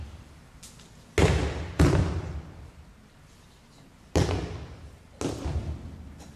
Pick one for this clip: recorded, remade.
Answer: recorded